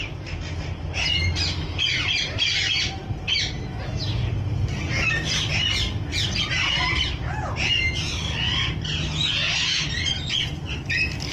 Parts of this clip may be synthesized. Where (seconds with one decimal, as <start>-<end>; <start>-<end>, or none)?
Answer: none